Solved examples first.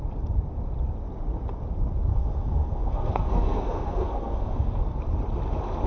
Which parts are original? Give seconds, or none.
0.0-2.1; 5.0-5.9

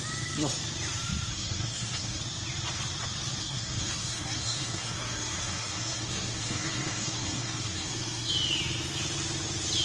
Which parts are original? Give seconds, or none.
0.0-1.3; 2.2-3.4; 8.3-9.8